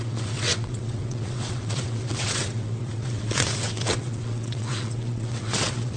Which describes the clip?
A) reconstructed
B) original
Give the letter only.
A